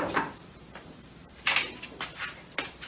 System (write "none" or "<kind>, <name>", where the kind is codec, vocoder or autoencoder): none